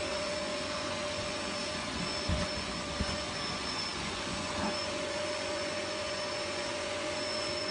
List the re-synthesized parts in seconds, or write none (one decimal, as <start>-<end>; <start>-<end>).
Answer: 0.0-7.7